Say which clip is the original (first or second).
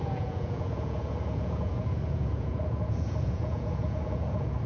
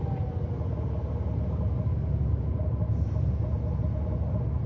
second